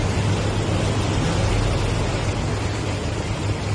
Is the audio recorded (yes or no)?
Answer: yes